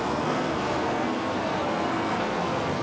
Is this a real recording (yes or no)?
no